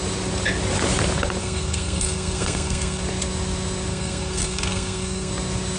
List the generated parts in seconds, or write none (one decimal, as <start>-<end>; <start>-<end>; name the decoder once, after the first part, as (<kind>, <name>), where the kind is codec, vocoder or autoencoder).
1.4-3.0 (codec, SNAC); 3.9-5.3